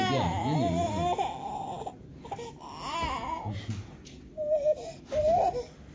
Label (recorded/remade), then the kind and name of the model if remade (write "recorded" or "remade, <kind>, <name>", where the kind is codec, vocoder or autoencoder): recorded